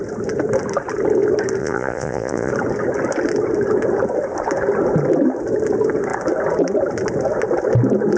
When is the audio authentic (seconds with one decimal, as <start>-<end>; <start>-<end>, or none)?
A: 0.0-1.6; 2.5-8.2

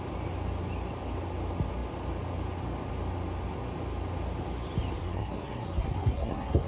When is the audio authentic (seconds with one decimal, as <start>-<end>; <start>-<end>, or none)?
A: 0.0-5.0

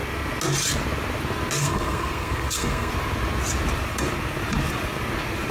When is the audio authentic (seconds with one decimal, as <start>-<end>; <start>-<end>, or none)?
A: 0.0-1.6; 2.9-5.5